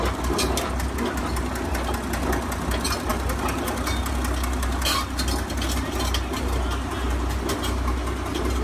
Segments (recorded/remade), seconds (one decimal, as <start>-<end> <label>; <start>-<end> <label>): 0.0-8.6 recorded